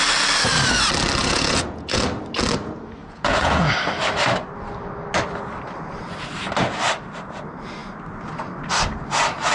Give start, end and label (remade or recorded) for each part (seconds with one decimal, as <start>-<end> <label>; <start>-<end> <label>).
0.0-1.2 recorded; 1.2-2.0 remade; 2.0-3.0 recorded; 3.0-3.7 remade; 3.7-9.5 recorded